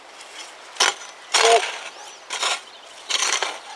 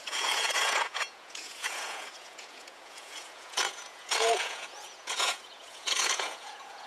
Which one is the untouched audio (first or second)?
first